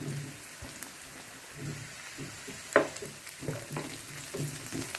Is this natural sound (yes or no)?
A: yes